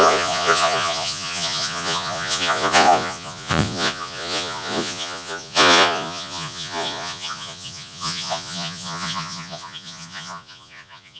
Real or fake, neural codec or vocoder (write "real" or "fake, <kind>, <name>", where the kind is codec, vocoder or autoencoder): fake, vocoder, Vocos